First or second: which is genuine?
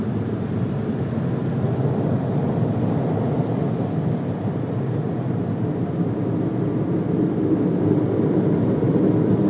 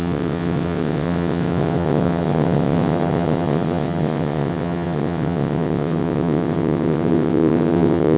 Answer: first